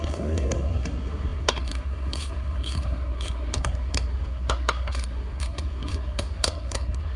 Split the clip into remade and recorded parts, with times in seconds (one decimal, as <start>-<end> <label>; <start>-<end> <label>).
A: 0.0-7.2 remade